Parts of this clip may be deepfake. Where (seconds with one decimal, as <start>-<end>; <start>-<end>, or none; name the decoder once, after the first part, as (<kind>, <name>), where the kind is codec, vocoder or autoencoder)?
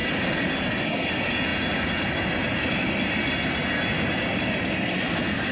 none